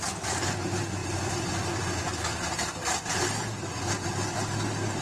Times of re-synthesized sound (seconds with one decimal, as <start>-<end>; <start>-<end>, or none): none